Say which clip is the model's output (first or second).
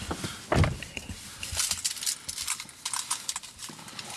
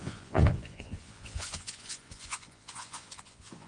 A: second